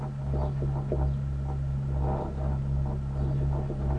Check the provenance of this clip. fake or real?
real